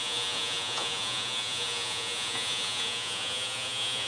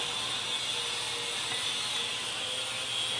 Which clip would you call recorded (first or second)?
second